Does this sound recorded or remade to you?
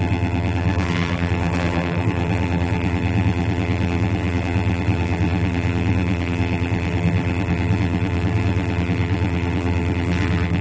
remade